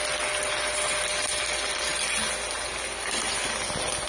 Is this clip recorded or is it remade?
recorded